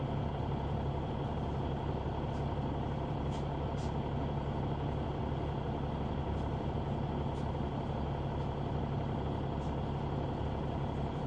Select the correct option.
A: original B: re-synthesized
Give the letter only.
A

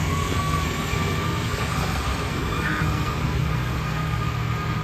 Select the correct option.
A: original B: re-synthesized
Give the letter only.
B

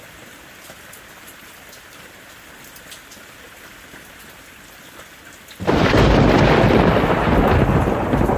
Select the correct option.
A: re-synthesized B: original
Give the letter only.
B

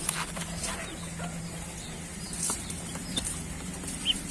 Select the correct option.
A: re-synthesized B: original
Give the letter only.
B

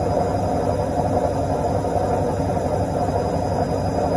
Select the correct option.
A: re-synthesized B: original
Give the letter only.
B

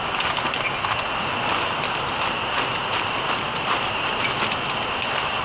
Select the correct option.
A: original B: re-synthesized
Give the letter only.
A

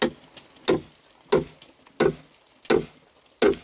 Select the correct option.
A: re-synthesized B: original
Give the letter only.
B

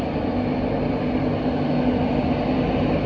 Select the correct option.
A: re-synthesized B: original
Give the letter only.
B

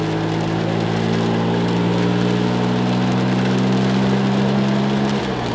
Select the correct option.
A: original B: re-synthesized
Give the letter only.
A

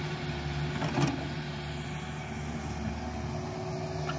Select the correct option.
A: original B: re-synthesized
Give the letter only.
A